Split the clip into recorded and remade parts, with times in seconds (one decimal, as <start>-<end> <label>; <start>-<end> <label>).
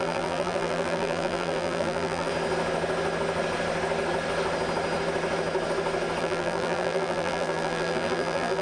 0.0-2.3 remade; 2.3-6.2 recorded; 6.2-8.6 remade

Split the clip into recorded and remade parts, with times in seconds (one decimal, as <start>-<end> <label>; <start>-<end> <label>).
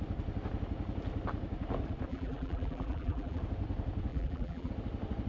0.0-2.1 recorded; 2.1-3.4 remade; 3.4-4.1 recorded; 4.1-4.7 remade; 4.7-5.3 recorded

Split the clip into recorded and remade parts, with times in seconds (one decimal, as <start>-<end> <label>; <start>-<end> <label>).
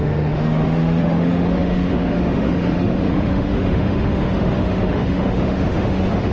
0.0-6.3 remade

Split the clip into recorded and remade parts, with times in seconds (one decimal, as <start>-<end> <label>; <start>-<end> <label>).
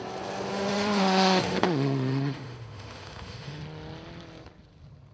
0.0-0.5 recorded; 0.5-3.6 remade; 3.6-5.1 recorded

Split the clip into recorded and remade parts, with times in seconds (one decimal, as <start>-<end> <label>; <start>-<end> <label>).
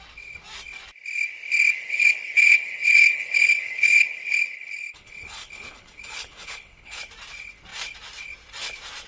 0.0-1.8 recorded; 1.8-7.0 remade; 7.0-9.1 recorded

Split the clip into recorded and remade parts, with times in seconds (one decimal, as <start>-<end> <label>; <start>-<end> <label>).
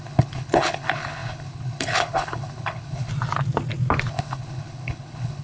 0.0-3.1 remade; 3.1-4.1 recorded; 4.1-5.4 remade